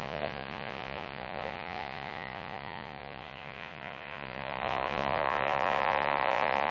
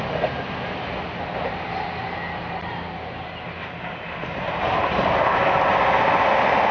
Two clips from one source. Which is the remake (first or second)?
first